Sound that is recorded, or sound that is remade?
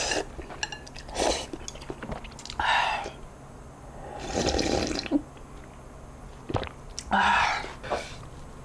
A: recorded